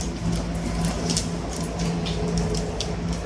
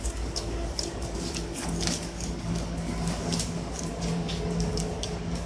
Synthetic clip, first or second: second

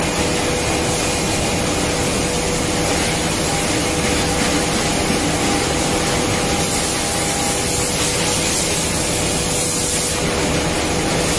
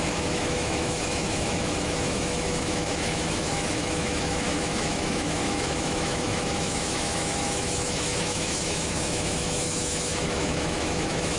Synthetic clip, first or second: second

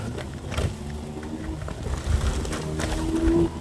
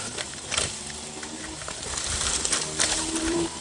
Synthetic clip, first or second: second